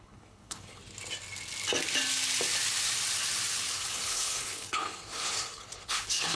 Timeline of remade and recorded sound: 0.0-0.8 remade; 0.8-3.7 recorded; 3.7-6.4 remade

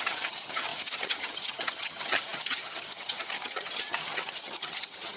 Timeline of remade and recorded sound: 0.0-5.2 remade

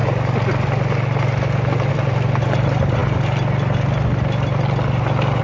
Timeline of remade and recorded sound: 0.0-1.9 recorded; 1.9-3.0 remade; 3.0-5.4 recorded